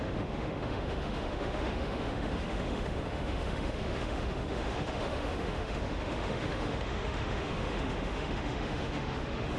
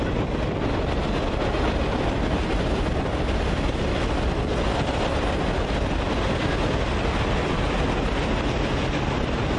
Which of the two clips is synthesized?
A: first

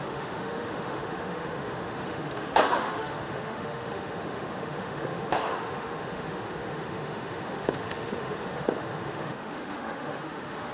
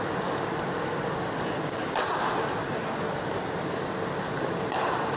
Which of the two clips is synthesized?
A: first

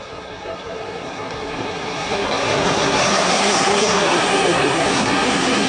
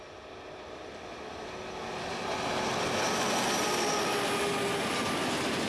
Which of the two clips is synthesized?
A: first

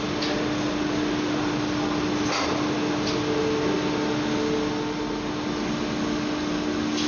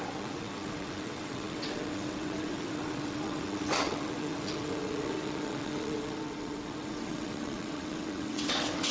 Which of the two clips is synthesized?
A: second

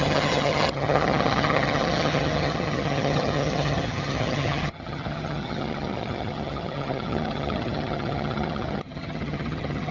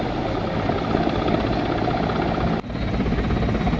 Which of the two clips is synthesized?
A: first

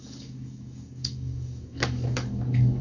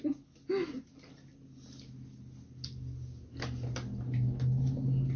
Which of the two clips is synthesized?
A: first